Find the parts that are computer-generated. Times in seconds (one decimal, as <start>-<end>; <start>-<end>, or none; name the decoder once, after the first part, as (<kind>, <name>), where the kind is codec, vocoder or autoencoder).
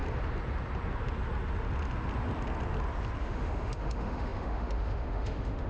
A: 3.2-5.7 (autoencoder, DAC-VAE)